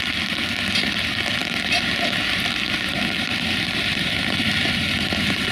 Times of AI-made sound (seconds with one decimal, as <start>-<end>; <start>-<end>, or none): none